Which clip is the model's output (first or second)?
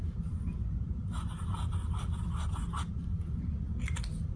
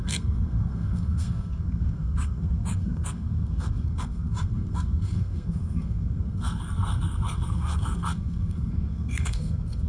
second